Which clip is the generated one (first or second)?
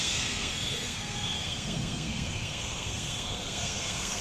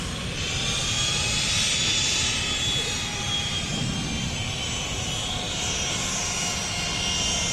first